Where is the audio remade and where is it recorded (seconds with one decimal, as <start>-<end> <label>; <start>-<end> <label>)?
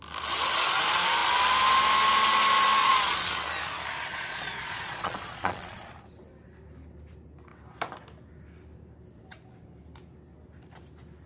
0.0-2.8 recorded; 2.8-3.3 remade; 3.3-4.1 recorded; 4.1-5.9 remade; 5.9-11.3 recorded